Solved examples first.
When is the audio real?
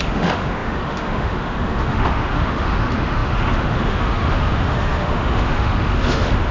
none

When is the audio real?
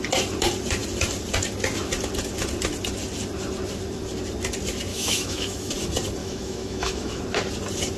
0.0-4.9; 5.7-6.2; 7.2-8.0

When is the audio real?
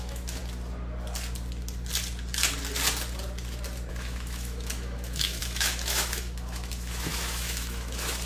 0.4-3.9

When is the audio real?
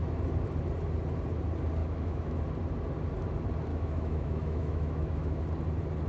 0.0-1.8; 2.4-3.7; 5.4-6.1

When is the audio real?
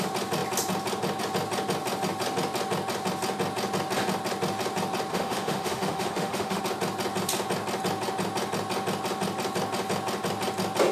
0.0-5.1; 6.6-10.9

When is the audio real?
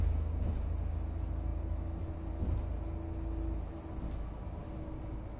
0.0-5.4